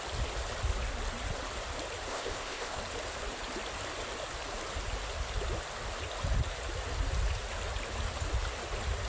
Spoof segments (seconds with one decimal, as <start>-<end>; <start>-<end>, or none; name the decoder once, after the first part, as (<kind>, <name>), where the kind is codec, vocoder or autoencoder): 2.1-2.8 (codec, ZipCodec)